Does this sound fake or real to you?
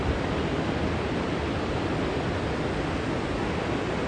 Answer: real